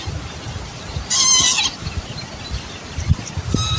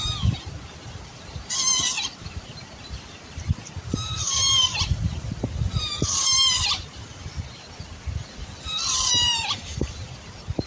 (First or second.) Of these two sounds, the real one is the first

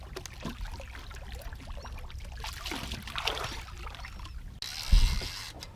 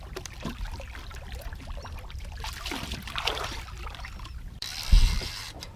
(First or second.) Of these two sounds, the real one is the first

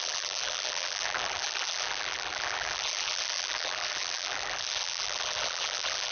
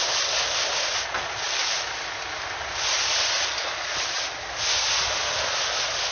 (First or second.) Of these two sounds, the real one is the second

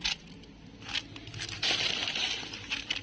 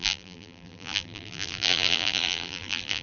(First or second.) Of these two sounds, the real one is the first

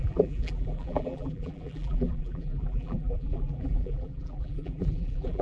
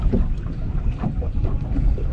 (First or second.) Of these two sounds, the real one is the second